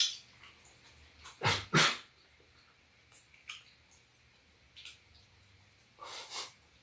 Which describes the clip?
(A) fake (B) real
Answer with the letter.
B